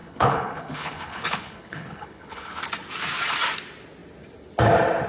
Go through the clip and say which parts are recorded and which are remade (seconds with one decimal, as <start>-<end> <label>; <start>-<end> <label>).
0.0-2.6 remade; 2.6-5.1 recorded